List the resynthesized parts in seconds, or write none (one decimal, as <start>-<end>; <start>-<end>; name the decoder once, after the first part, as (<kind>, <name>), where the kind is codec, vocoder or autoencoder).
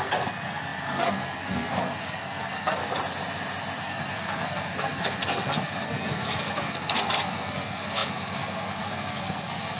0.0-2.8 (codec, SNAC); 3.8-9.8